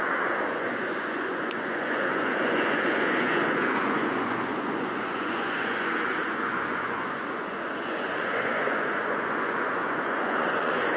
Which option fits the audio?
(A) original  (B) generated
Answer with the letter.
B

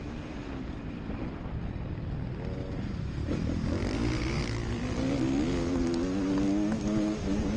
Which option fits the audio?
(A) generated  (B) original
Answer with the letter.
B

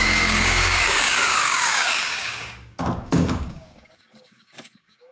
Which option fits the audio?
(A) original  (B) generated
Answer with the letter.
B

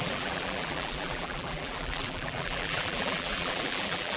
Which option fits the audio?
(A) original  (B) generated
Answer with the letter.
B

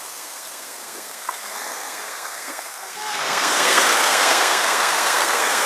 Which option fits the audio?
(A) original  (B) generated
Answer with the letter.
B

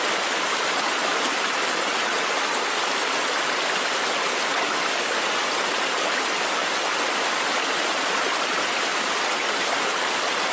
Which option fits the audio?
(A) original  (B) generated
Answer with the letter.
A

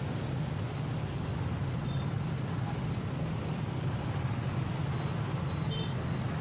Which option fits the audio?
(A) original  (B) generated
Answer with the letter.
A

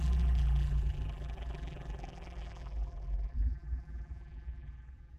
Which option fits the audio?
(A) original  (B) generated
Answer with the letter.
B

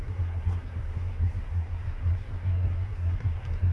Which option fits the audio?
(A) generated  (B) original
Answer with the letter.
A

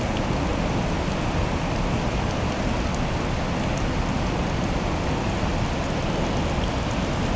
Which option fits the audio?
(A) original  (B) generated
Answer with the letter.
A